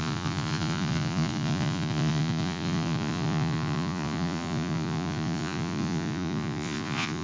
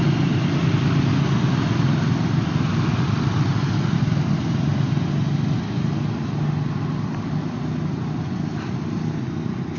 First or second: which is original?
second